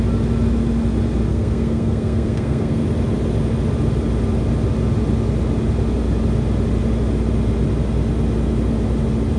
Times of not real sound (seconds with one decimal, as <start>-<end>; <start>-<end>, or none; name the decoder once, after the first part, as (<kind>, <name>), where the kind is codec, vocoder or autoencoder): 1.3-2.8 (codec, SNAC)